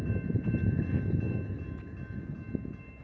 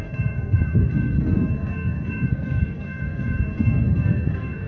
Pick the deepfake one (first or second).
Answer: second